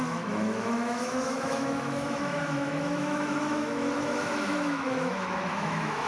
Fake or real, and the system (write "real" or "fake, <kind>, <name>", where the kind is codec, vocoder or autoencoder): fake, autoencoder, DAC-VAE